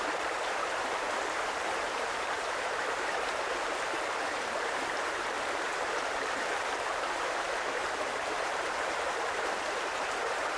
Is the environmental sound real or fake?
fake